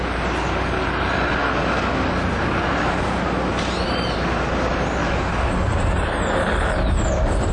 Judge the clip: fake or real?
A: real